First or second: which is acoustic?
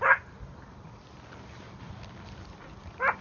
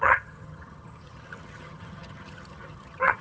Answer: first